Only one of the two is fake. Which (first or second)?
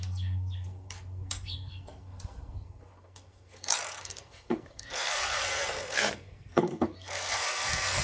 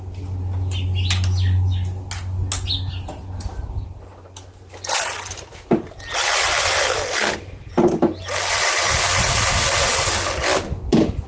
first